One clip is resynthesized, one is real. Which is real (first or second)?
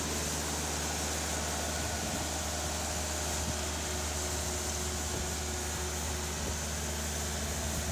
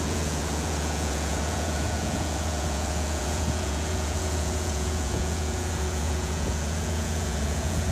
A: first